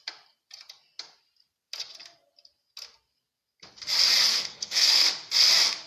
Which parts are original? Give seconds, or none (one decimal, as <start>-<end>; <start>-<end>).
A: 0.0-4.3; 5.1-5.9